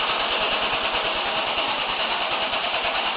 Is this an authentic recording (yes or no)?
yes